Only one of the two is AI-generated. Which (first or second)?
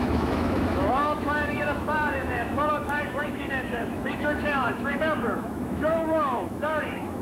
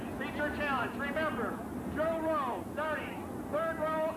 first